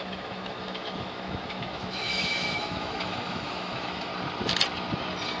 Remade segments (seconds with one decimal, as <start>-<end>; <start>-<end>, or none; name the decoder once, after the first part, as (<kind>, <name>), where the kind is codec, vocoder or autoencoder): 0.0-4.1 (autoencoder, DAC-VAE)

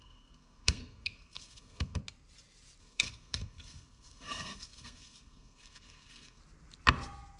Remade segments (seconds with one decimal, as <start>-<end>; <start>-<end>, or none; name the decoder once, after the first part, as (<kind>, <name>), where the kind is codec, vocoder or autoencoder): 0.0-2.0 (codec, SNAC); 2.8-6.4

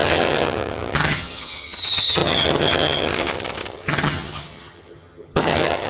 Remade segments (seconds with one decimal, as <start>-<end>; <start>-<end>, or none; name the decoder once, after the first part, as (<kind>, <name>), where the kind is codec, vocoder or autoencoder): 0.0-5.9 (vocoder, HiFi-GAN)

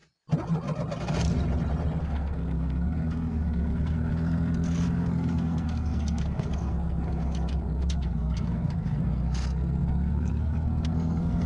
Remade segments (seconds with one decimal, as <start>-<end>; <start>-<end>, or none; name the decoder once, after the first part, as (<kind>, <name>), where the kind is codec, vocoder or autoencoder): 2.0-11.5 (codec, SNAC)

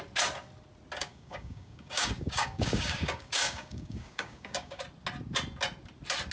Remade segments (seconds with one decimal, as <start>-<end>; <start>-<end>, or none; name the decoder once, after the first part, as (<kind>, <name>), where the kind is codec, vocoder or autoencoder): 1.0-4.8 (codec, DAC)